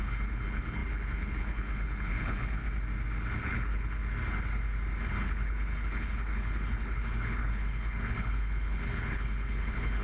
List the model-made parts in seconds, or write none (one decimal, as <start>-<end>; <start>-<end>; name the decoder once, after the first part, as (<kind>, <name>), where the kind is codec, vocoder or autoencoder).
0.0-2.6 (codec, HILCodec); 3.4-4.0; 5.1-10.0